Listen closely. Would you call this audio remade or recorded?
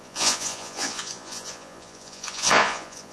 remade